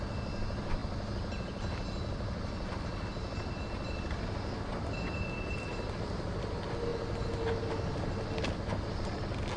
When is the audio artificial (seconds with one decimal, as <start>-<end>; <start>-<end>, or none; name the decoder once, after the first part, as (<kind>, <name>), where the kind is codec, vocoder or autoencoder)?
none